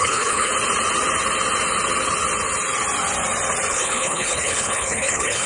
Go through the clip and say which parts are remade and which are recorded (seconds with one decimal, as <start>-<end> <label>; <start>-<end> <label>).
0.0-0.5 remade; 0.5-3.7 recorded; 3.7-5.5 remade